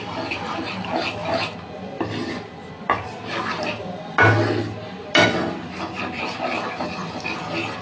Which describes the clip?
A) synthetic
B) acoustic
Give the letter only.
B